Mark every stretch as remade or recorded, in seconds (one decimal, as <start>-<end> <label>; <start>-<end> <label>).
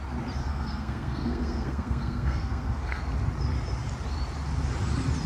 0.0-0.4 recorded; 0.4-3.0 remade; 3.0-5.3 recorded